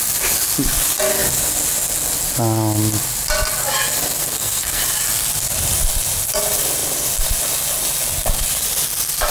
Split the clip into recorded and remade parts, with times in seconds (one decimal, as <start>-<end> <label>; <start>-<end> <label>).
0.0-4.2 recorded; 4.2-4.8 remade; 4.8-9.3 recorded